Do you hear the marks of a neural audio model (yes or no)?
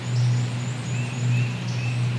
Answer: no